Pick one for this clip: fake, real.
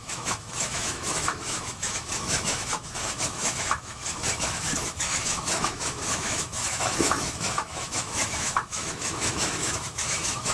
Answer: fake